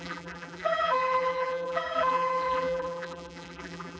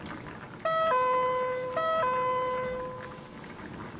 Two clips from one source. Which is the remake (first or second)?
first